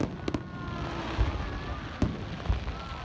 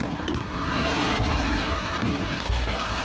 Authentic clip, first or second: first